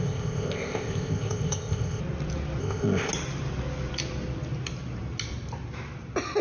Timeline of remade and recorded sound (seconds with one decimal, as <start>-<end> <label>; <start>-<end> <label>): 0.0-2.0 remade; 2.0-2.6 recorded; 2.6-3.1 remade; 3.1-6.4 recorded